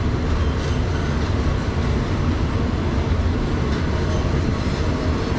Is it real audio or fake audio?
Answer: real